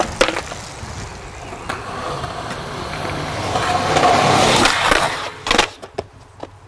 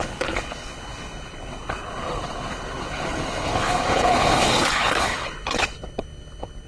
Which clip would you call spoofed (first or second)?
second